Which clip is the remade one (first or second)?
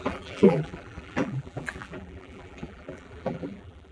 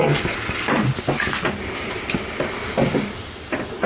first